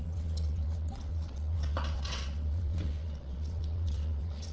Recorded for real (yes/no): no